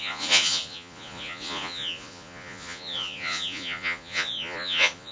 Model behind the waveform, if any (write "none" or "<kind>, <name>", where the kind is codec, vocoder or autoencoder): vocoder, Vocos